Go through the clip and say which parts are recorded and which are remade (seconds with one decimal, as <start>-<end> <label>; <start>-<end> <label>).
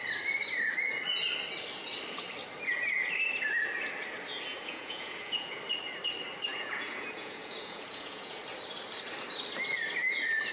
0.0-4.5 recorded; 4.5-5.6 remade; 5.6-6.5 recorded; 6.5-8.4 remade; 8.4-10.5 recorded